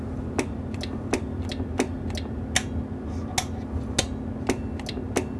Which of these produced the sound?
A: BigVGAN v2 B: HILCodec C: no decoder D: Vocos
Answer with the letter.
C